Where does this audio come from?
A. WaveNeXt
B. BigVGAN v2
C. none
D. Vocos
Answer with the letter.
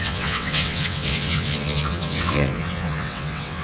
A